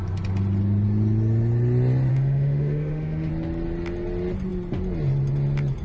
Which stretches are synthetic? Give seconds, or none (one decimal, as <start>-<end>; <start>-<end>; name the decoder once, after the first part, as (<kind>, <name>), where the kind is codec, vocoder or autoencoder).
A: 2.1-3.3 (autoencoder, DAC-VAE)